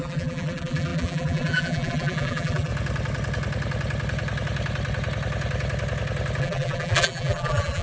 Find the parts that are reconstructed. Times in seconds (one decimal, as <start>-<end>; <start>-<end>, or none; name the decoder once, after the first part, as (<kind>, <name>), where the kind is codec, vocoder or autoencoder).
0.0-2.7 (vocoder, BigVGAN v2); 6.4-7.8